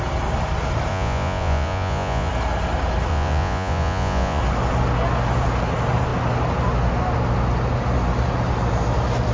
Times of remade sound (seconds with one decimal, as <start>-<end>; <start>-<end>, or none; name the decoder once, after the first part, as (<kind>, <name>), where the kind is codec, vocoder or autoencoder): 0.9-2.3 (vocoder, Vocos); 3.1-4.4